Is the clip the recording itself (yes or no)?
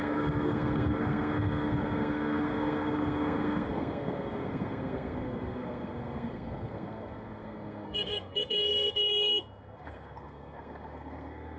no